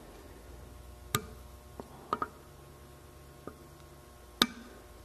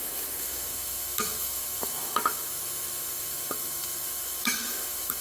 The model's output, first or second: second